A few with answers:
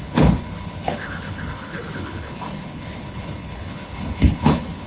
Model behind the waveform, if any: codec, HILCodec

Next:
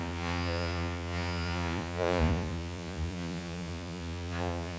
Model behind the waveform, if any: vocoder, Vocos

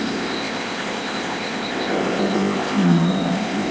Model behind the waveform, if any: codec, ZipCodec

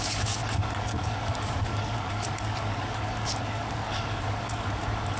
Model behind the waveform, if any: codec, DAC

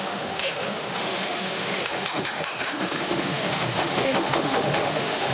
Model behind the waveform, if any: autoencoder, DAC-VAE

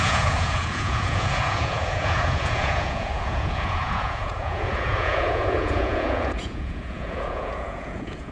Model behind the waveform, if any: vocoder, Vocos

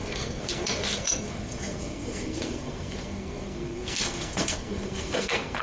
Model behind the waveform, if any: codec, SNAC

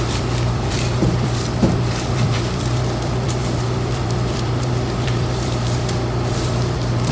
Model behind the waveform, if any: vocoder, BigVGAN v2